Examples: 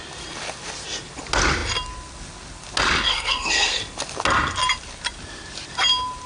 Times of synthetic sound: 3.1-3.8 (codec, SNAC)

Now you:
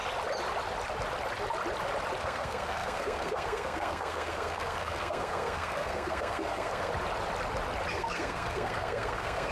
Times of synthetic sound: 2.2-6.9 (codec, SNAC); 7.9-9.5

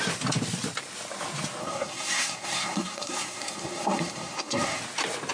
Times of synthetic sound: 1.6-4.8 (codec, SNAC)